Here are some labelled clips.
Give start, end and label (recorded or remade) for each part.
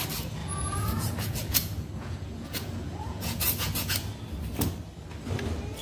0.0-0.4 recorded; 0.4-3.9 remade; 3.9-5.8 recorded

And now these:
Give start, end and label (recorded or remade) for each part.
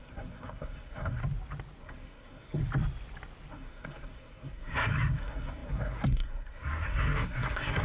0.0-1.2 remade; 1.2-1.8 recorded; 1.8-2.6 remade; 2.6-3.5 recorded; 3.5-7.8 remade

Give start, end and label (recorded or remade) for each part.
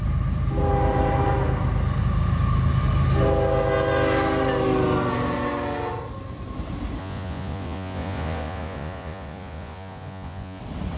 0.0-7.0 recorded; 7.0-10.6 remade; 10.6-11.0 recorded